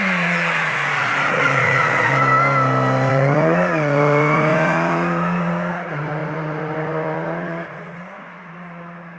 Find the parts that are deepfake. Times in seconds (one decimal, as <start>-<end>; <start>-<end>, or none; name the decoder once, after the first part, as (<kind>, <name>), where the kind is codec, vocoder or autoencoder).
0.0-2.2 (vocoder, Vocos); 3.1-9.2